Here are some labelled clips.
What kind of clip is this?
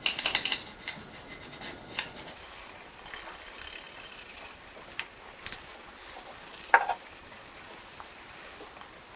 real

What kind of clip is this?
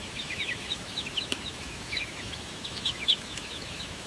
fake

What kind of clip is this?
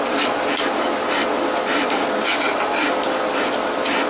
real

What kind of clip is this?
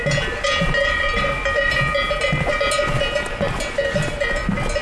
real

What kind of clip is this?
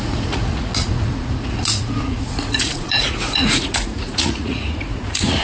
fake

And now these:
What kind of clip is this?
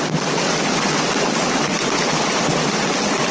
real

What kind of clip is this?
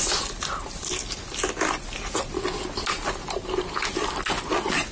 real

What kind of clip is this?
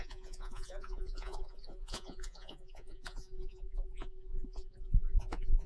fake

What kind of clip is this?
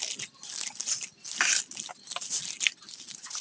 real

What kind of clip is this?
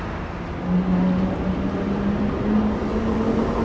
real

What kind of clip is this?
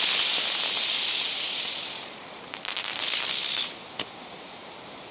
real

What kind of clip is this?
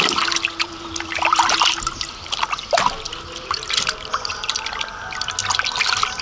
real